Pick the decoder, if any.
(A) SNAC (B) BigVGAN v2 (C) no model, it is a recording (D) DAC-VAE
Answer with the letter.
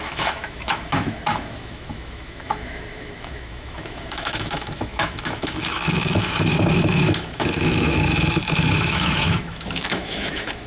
D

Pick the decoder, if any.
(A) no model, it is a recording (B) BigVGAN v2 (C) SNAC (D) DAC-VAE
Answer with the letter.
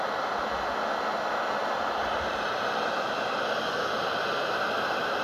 A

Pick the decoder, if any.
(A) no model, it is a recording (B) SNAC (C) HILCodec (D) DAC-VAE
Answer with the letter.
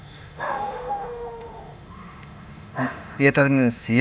D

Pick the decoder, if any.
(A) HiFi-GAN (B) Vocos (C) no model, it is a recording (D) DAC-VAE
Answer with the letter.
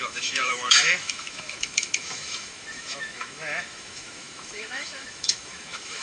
D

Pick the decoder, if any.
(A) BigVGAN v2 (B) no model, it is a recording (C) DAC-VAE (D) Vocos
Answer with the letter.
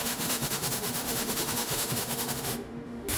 C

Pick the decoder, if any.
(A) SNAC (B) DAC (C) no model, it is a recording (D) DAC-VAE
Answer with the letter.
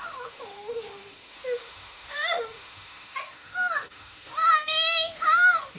D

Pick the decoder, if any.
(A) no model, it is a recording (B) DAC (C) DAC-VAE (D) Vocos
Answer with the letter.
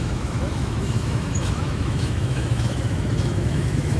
C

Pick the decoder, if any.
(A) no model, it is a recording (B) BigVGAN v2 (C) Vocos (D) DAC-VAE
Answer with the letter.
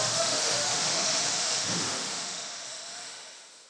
D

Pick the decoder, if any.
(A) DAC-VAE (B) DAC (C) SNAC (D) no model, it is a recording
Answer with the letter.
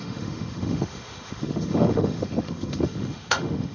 A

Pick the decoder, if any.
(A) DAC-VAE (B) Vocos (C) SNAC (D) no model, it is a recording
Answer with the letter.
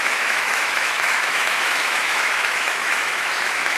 A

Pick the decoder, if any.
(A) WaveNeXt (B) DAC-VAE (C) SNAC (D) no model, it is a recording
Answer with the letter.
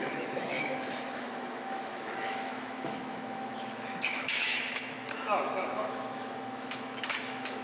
B